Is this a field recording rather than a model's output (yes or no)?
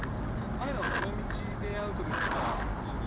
yes